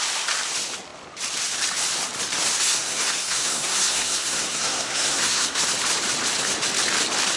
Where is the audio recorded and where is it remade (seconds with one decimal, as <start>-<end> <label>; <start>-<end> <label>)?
0.0-2.6 recorded; 2.6-5.6 remade; 5.6-7.4 recorded

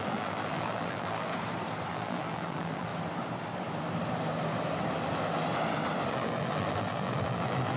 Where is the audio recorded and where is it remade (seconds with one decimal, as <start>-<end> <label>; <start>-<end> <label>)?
0.0-1.3 remade; 1.3-1.9 recorded; 1.9-2.9 remade; 2.9-6.1 recorded; 6.1-7.8 remade